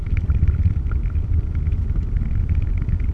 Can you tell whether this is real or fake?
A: real